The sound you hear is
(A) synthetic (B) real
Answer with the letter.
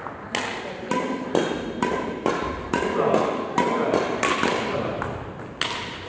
B